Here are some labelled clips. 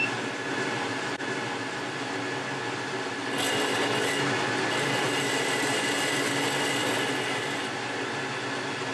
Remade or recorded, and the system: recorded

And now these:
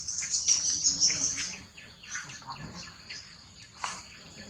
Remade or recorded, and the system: recorded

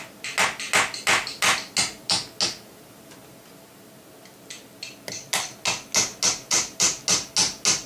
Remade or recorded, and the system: recorded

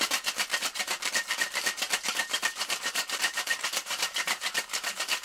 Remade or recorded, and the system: remade, vocoder, BigVGAN v2